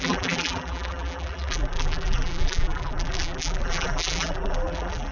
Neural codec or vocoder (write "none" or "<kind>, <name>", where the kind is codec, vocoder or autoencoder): vocoder, BigVGAN v2